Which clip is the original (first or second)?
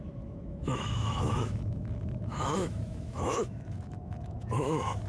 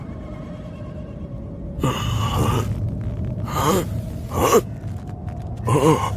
second